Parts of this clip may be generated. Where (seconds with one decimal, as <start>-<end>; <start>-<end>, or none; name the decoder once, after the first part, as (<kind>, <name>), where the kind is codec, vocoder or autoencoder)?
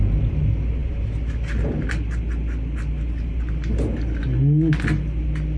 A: none